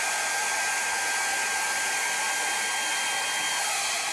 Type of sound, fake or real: real